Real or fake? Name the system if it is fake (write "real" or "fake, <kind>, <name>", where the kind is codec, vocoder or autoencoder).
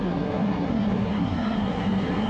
fake, codec, SNAC